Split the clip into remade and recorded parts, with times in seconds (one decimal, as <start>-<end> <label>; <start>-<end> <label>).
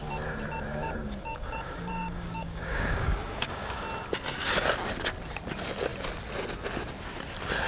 0.0-0.7 recorded; 0.7-3.8 remade; 3.8-7.7 recorded